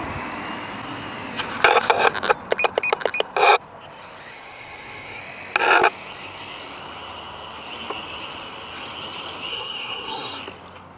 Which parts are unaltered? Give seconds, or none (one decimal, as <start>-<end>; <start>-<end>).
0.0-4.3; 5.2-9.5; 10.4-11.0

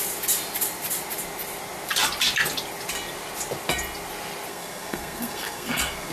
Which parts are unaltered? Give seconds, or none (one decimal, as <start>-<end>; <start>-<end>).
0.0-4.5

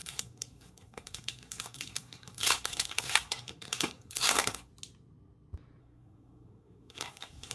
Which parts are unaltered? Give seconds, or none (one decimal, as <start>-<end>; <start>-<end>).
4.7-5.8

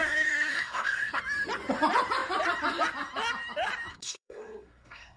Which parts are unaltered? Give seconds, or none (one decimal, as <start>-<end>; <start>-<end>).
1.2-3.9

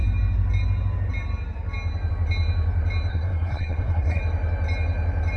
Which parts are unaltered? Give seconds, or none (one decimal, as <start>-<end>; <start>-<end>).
0.0-3.1; 4.2-5.4

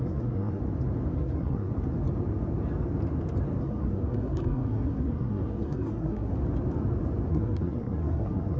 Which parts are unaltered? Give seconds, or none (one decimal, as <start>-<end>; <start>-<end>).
0.6-1.1; 1.7-3.6; 6.3-7.3

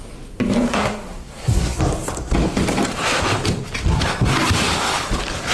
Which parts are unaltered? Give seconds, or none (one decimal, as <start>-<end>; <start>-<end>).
0.0-0.7; 1.8-5.5

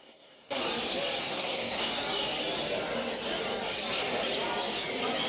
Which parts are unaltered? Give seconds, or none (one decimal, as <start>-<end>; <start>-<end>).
0.6-1.2; 1.9-5.3